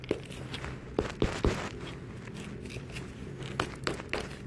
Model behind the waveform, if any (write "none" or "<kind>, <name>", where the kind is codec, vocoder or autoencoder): none